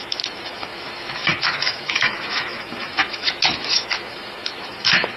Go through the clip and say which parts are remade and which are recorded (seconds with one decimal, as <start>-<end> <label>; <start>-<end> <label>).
0.0-5.2 remade